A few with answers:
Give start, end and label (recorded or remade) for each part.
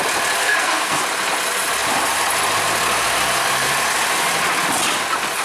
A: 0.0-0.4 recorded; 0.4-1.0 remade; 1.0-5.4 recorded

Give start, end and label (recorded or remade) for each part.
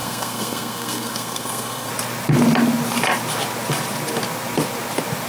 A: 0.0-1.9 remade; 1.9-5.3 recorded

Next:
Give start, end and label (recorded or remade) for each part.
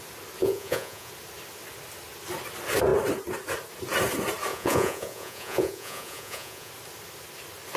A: 0.0-0.4 recorded; 0.4-1.1 remade; 1.1-4.5 recorded; 4.5-6.7 remade; 6.7-7.8 recorded